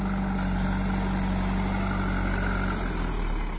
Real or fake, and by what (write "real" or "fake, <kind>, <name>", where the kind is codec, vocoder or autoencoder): real